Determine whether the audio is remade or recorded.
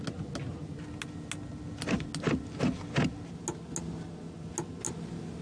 recorded